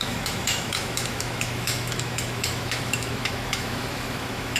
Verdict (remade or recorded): remade